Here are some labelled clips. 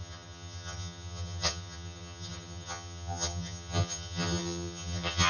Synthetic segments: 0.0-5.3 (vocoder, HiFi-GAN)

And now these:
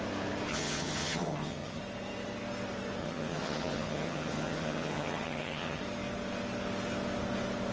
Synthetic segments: 0.5-1.8 (vocoder, HiFi-GAN); 3.0-5.8

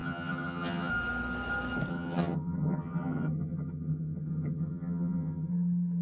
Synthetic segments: 0.0-0.9 (vocoder, HiFi-GAN); 1.9-5.5

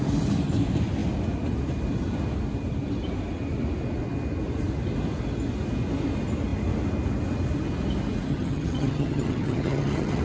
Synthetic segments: 8.3-10.2 (vocoder, HiFi-GAN)

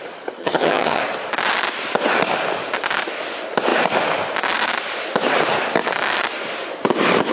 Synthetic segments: 0.4-1.0 (vocoder, HiFi-GAN)

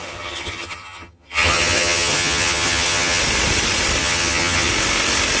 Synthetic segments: 0.0-3.2 (vocoder, HiFi-GAN); 4.0-4.7